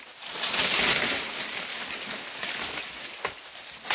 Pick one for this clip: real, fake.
real